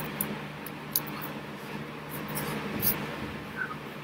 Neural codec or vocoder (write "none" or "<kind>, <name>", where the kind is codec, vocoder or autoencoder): none